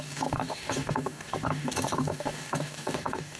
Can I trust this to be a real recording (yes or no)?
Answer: no